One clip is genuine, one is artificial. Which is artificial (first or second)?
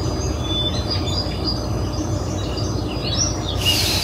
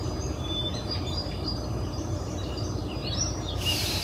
second